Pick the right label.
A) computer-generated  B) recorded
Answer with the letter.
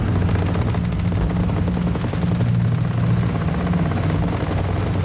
B